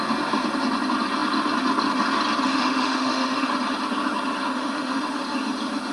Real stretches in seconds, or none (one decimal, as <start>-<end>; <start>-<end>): 0.0-2.5; 3.5-4.5; 5.0-5.9